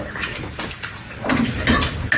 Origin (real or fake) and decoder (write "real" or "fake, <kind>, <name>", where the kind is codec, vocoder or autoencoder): real